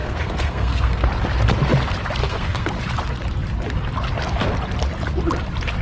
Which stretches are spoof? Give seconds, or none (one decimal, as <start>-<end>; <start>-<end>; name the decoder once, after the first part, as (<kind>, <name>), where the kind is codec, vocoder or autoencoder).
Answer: 0.0-1.1 (codec, SNAC); 2.2-2.7